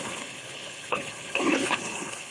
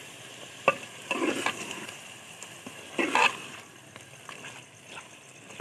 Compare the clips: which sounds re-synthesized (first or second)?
first